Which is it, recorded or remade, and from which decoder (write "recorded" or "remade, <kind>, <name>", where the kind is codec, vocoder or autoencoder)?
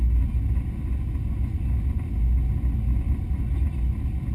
recorded